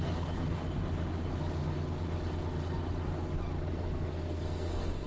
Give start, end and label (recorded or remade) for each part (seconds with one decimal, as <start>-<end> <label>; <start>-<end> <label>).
0.0-0.6 remade; 0.6-3.7 recorded; 3.7-5.1 remade